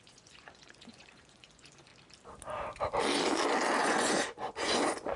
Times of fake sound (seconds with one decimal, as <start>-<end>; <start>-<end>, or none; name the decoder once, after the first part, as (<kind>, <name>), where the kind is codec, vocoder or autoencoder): 0.0-1.9 (vocoder, Vocos); 3.8-5.2